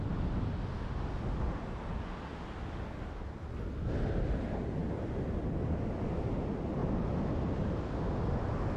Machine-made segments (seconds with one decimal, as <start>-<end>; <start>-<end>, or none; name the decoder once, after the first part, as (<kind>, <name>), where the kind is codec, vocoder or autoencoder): none